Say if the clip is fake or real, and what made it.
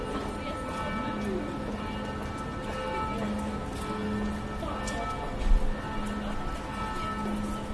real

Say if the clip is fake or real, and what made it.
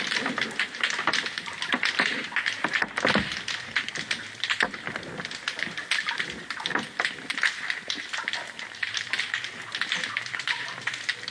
real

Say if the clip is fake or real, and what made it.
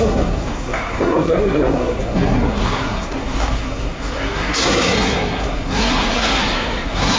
fake, codec, SNAC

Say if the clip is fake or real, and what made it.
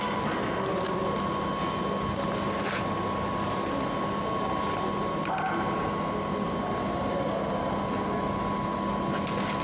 real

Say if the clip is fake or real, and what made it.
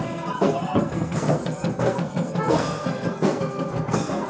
fake, codec, SNAC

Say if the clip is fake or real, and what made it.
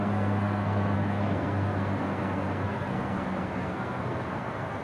fake, codec, SNAC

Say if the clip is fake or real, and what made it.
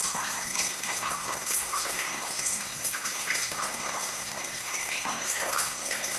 fake, codec, SNAC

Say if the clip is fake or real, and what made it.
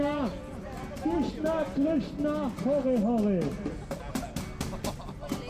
real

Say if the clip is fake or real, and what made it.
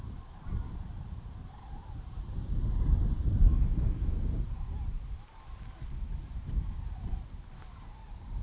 real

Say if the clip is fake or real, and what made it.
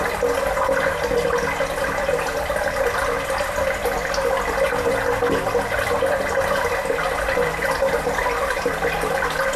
real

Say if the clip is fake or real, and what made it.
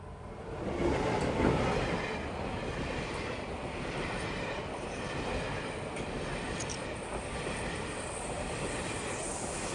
real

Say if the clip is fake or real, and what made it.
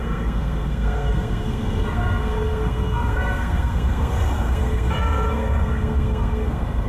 fake, codec, SNAC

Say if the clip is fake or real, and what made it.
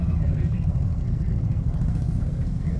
fake, codec, SNAC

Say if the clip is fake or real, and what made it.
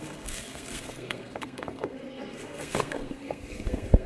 fake, codec, SNAC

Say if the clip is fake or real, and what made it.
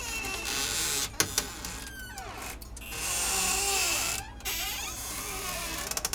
real